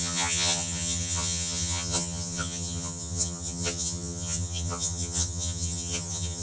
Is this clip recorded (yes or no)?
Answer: no